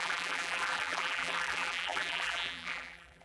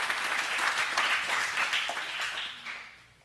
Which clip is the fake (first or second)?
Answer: first